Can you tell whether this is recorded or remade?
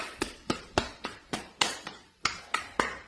remade